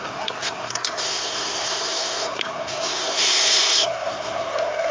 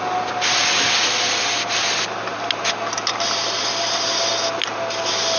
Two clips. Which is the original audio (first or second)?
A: second